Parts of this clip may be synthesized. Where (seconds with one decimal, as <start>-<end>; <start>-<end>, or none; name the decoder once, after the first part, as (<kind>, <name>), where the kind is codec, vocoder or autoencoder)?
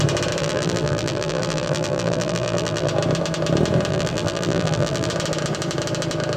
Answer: 0.4-2.9 (vocoder, BigVGAN v2); 3.9-5.1